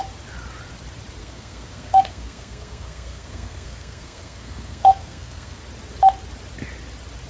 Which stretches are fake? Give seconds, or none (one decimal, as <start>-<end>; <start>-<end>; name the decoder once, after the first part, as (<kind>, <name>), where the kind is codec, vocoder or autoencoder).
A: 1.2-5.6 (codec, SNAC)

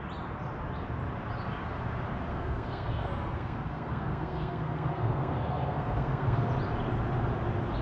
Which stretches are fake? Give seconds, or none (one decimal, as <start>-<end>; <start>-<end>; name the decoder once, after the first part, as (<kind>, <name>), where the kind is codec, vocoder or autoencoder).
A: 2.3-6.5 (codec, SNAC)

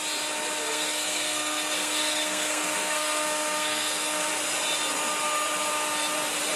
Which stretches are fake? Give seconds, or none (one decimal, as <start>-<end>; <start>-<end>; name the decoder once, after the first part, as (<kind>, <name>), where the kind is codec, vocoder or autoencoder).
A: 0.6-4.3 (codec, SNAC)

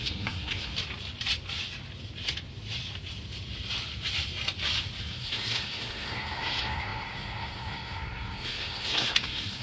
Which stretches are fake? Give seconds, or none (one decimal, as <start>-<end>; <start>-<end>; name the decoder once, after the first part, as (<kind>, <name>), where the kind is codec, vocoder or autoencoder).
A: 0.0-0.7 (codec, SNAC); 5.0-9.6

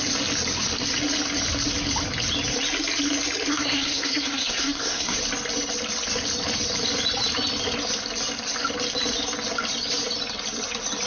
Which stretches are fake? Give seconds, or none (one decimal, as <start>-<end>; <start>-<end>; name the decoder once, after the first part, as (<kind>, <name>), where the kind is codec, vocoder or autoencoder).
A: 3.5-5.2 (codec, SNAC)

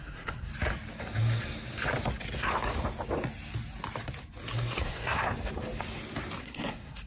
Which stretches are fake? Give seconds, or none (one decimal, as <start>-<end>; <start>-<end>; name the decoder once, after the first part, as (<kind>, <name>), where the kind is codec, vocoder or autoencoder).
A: 0.0-0.5 (codec, SNAC); 4.8-5.2; 6.4-7.1